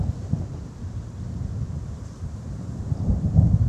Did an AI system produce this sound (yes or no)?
yes